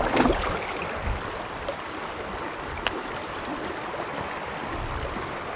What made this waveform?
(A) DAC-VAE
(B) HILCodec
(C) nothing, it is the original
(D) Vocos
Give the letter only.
C